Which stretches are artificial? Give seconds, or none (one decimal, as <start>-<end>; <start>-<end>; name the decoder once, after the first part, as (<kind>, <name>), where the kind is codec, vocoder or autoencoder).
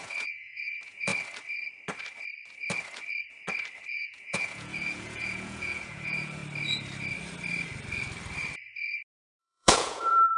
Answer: 0.0-1.1 (vocoder, Vocos); 3.9-6.4; 9.4-10.4